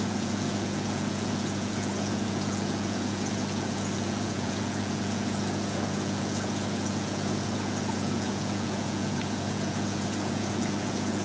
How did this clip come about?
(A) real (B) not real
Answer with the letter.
B